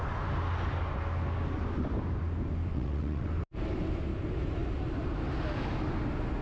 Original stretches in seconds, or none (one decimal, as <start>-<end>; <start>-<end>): 0.0-2.7; 3.3-6.4